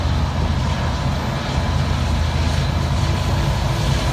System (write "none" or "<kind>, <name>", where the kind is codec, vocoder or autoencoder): none